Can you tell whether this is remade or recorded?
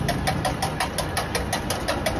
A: recorded